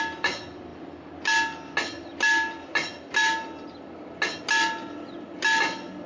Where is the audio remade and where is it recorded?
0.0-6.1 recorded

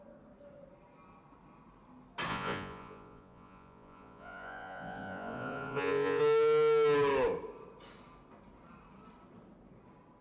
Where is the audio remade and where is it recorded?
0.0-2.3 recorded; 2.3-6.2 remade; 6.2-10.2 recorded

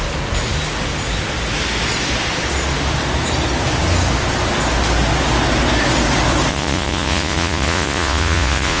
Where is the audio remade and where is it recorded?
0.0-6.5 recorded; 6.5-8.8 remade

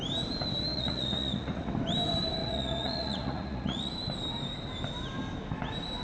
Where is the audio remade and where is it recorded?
0.0-0.7 recorded; 0.7-1.7 remade; 1.7-2.4 recorded; 2.4-3.9 remade; 3.9-6.0 recorded